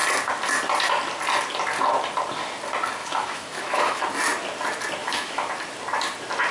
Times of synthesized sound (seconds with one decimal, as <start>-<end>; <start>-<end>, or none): 3.0-4.0; 5.0-5.5